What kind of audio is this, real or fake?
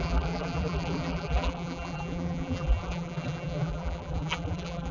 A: fake